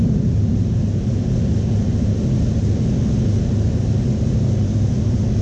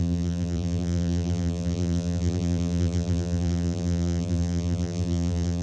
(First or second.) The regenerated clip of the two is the second